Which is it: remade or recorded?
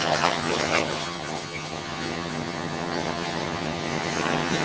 remade